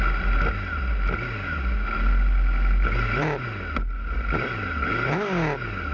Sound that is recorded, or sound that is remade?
recorded